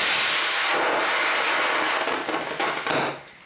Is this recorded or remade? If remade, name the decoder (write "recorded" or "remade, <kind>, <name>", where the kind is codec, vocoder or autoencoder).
recorded